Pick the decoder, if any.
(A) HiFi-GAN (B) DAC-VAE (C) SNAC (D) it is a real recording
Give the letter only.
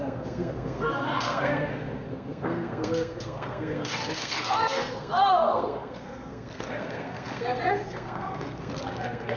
C